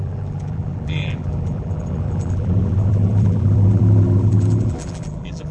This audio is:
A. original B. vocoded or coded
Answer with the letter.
B